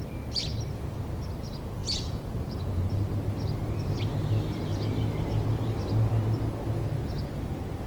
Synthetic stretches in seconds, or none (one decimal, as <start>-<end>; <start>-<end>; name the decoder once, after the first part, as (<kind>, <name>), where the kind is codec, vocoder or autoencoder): 1.8-2.9 (vocoder, Vocos)